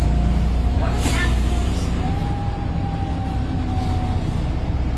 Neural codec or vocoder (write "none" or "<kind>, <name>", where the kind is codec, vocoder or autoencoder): none